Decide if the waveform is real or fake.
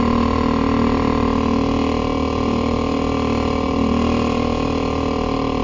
real